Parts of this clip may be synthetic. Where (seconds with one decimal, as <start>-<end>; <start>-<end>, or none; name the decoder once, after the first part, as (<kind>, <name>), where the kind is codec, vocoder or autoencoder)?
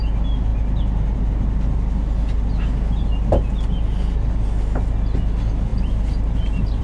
none